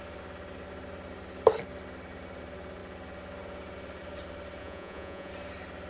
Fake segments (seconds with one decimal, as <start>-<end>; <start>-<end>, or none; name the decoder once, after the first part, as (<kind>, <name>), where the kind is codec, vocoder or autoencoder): 4.6-5.3 (vocoder, Vocos)